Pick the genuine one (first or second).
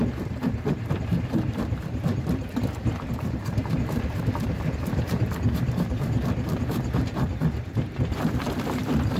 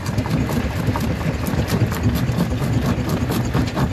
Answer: second